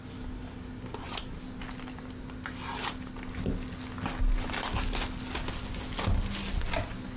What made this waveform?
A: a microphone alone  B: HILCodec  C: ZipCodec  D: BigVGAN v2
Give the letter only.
A